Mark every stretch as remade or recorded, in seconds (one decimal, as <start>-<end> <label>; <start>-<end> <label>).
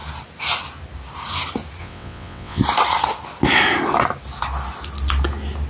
0.0-1.8 recorded; 1.8-2.6 remade; 2.6-5.7 recorded